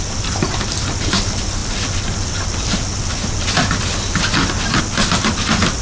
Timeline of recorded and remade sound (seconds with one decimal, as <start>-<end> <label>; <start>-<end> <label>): 0.0-5.8 recorded